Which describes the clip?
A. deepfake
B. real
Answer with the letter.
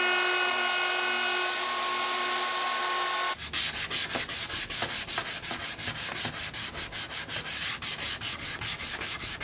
B